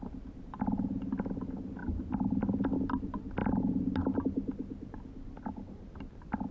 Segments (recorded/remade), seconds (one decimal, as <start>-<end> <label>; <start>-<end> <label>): 0.0-6.5 recorded